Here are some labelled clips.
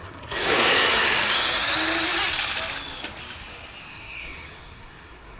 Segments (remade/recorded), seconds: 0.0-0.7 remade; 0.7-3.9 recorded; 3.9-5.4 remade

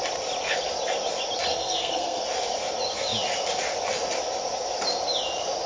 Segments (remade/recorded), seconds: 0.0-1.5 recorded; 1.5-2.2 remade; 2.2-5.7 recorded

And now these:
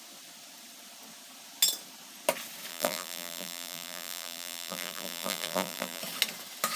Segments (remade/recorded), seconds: 0.0-2.7 recorded; 2.7-6.0 remade; 6.0-6.8 recorded